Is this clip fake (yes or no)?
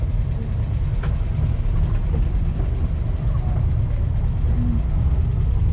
no